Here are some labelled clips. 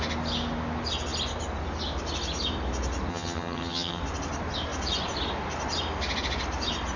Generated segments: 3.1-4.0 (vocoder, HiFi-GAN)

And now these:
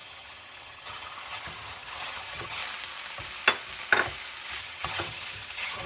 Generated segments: 0.0-2.6 (vocoder, HiFi-GAN); 4.6-5.9

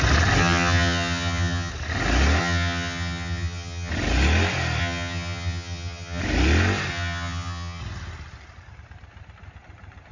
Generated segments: 0.4-1.7 (vocoder, HiFi-GAN); 2.4-3.9; 4.8-6.2; 6.9-7.8

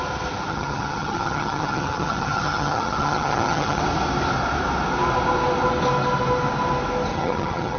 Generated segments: 0.5-3.8 (vocoder, HiFi-GAN); 7.1-7.8

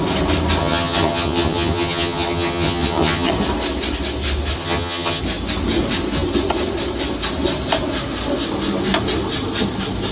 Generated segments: 0.6-3.3 (vocoder, HiFi-GAN); 4.6-5.2

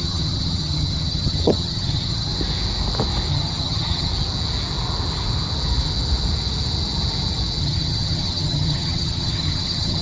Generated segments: 0.0-2.3 (vocoder, HiFi-GAN); 3.3-4.1; 7.6-10.0

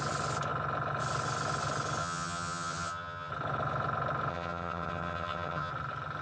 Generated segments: 2.0-3.3 (vocoder, HiFi-GAN); 4.3-5.7

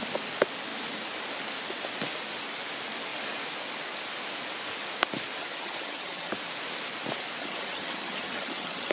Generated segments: 5.4-6.3 (vocoder, HiFi-GAN); 7.4-8.9